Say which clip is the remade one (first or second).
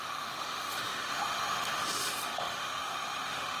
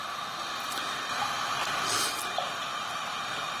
first